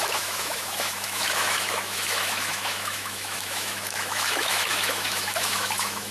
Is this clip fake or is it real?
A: fake